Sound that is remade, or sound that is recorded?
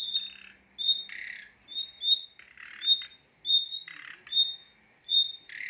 recorded